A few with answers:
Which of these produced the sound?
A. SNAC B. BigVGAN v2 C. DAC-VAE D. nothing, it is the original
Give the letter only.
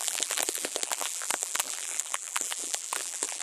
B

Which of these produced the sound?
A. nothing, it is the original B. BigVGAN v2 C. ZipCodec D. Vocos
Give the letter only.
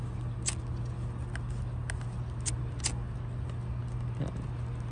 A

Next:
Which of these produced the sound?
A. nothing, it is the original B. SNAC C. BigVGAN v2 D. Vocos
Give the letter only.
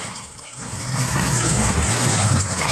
B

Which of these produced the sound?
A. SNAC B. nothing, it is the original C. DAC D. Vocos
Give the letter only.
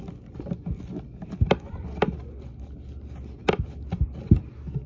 B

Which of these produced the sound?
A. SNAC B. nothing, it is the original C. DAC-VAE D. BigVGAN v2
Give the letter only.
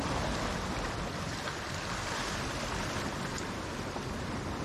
D